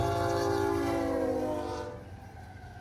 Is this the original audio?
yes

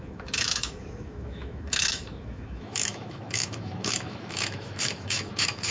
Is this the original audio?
no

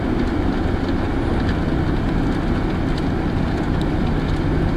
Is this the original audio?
yes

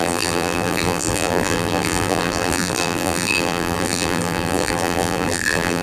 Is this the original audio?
no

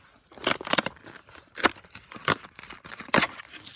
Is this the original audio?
yes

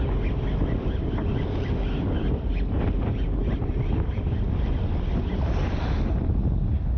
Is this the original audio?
yes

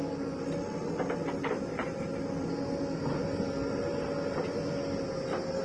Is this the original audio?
yes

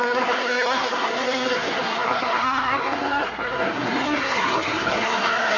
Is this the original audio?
no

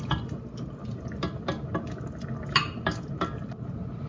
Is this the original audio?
yes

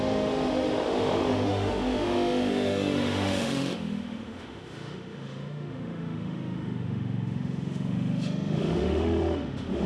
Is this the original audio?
no